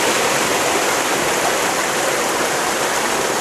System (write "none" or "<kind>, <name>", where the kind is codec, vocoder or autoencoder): none